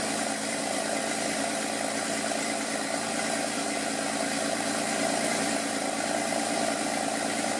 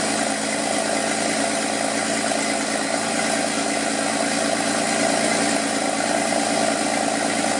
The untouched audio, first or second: second